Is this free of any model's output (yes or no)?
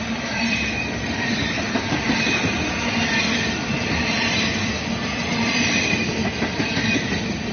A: no